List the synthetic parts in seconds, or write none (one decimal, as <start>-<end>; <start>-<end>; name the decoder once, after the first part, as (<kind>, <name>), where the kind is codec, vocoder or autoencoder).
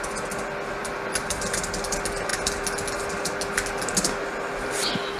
0.8-1.4 (vocoder, BigVGAN v2)